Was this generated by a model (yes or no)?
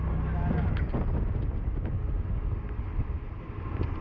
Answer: no